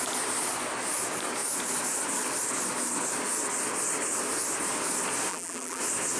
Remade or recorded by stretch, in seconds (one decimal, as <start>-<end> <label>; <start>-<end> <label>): 0.0-5.3 recorded; 5.3-5.8 remade; 5.8-6.2 recorded